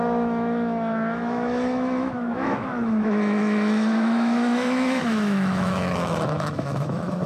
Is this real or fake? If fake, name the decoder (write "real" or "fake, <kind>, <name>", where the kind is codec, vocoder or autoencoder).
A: fake, autoencoder, DAC-VAE